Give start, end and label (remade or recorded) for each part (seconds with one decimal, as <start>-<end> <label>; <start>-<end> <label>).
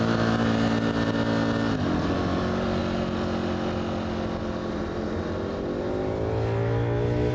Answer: 0.0-7.3 recorded